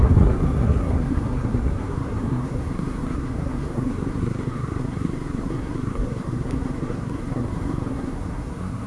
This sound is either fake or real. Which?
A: fake